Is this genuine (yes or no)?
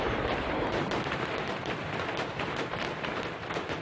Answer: no